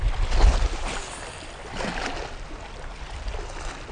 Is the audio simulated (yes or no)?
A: no